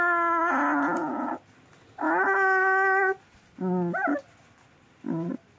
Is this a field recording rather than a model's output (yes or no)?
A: yes